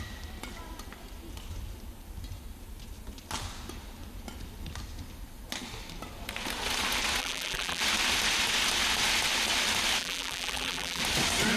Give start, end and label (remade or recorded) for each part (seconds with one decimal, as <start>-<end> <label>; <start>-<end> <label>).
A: 0.0-7.2 recorded; 7.2-7.8 remade; 7.8-10.0 recorded; 10.0-11.0 remade; 11.0-11.6 recorded